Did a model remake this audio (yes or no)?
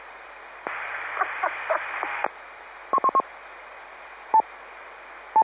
yes